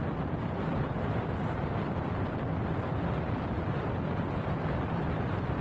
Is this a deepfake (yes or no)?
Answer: yes